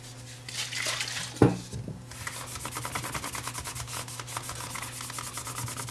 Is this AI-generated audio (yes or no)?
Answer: no